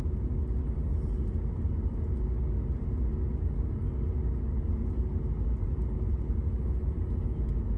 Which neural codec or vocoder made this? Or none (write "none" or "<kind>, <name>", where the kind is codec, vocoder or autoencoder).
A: none